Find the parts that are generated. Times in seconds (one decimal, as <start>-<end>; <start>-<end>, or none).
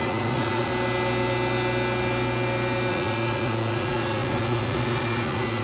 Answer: 0.0-0.7; 2.9-5.6